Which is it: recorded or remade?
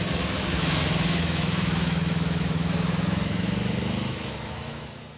remade